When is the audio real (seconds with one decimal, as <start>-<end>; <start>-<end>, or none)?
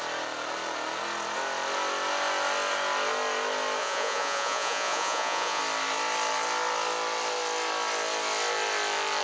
0.0-3.8; 5.6-9.2